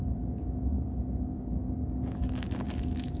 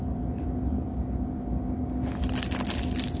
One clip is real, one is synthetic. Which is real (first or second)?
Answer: second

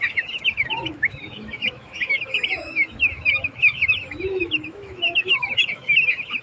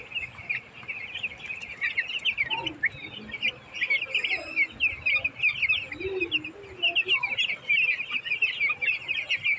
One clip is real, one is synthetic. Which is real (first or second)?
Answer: second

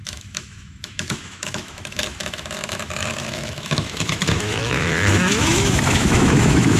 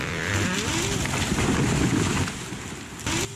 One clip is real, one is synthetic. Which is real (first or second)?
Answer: second